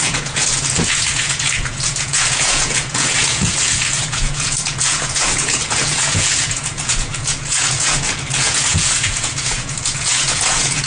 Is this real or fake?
fake